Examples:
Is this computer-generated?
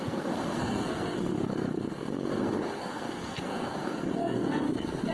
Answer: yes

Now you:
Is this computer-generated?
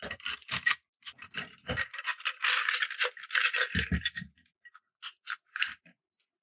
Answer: no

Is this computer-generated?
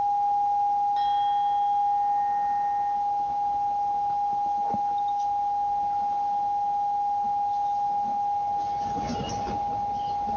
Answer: no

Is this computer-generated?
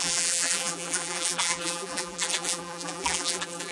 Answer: yes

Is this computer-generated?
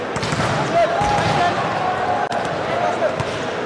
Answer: no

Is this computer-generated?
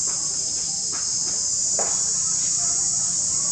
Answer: no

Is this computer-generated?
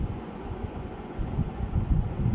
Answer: yes